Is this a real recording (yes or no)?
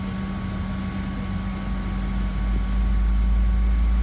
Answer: yes